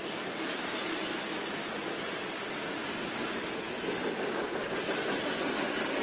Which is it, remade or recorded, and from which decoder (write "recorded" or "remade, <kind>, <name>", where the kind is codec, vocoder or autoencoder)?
recorded